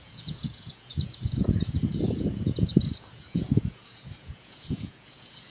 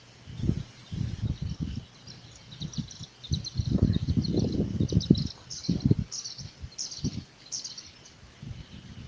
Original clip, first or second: second